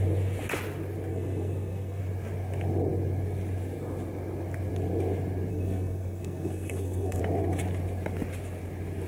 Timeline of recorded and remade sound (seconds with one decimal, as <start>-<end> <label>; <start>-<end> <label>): 0.0-1.1 recorded; 1.1-2.0 remade; 2.0-5.5 recorded; 5.5-7.2 remade; 7.2-9.1 recorded